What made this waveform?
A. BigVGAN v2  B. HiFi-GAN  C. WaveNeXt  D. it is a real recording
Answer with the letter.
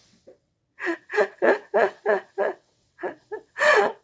C